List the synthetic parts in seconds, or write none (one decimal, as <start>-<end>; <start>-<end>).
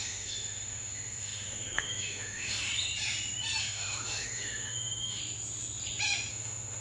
0.0-2.7; 3.6-5.2; 6.3-6.8